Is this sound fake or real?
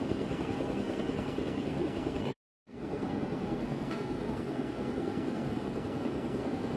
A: fake